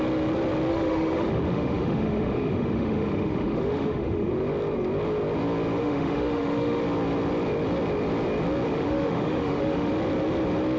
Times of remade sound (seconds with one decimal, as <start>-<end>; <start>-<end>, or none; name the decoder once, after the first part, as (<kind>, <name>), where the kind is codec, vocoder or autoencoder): 0.7-4.3 (autoencoder, DAC-VAE); 5.8-6.8; 8.7-9.9